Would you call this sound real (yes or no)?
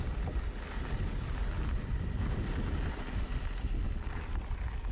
yes